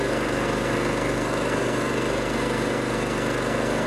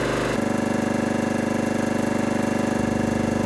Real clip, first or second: second